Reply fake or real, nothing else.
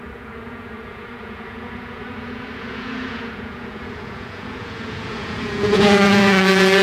fake